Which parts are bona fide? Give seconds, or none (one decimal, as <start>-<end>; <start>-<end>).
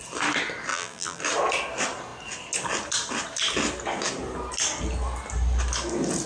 0.0-0.7; 1.2-6.3